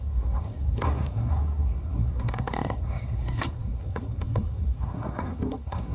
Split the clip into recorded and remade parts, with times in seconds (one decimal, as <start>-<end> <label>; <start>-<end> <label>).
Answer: 0.0-5.9 remade